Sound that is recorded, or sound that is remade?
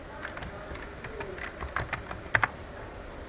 recorded